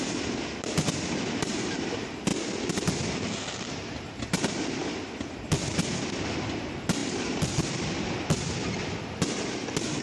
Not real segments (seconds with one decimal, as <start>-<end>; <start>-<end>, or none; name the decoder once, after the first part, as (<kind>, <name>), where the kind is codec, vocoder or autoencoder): 2.3-2.9 (vocoder, BigVGAN v2); 7.0-8.1